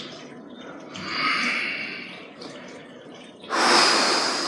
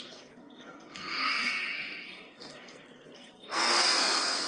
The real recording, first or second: first